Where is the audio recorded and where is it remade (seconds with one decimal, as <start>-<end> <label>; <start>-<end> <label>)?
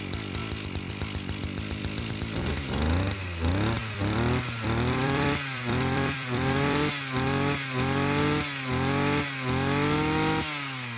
0.0-1.4 recorded; 1.4-2.5 remade; 2.5-3.8 recorded; 3.8-6.9 remade; 6.9-11.0 recorded